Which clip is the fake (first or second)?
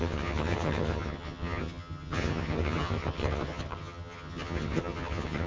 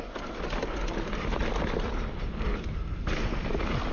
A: first